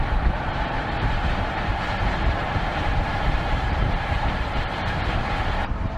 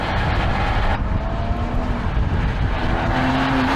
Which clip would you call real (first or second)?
second